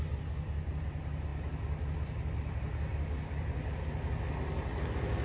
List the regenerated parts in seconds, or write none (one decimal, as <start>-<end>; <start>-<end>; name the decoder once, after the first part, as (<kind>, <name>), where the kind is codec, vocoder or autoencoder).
none